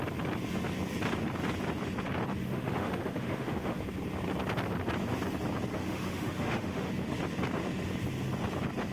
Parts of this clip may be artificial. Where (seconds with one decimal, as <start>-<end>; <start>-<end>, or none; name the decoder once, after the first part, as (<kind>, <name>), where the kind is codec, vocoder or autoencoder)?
2.5-3.8 (autoencoder, DAC-VAE); 5.7-6.9